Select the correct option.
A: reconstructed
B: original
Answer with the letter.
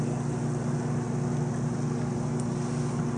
B